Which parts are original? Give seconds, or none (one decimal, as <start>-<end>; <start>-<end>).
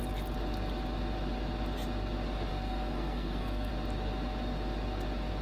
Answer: 0.0-2.5; 3.7-5.4